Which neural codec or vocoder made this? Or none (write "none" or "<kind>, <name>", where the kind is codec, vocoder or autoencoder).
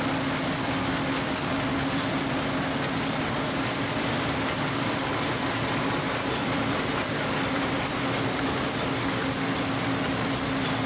none